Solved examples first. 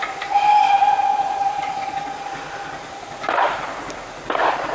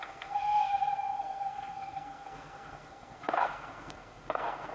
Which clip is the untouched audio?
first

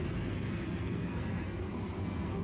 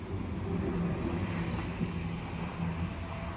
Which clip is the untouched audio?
second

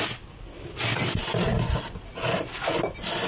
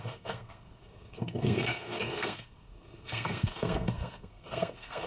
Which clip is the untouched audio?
first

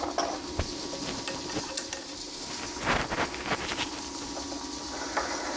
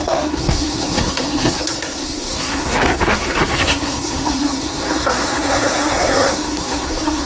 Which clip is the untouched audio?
first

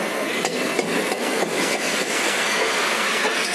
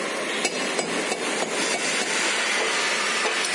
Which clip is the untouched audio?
second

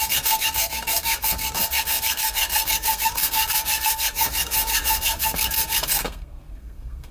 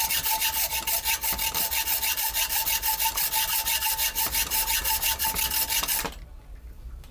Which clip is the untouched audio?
second